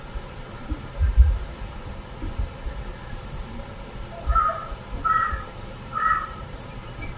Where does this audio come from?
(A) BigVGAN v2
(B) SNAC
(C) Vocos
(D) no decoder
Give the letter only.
A